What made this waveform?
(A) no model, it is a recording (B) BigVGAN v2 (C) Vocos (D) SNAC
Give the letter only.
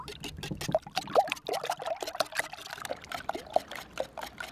A